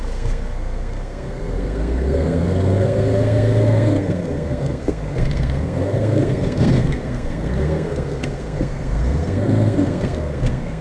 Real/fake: fake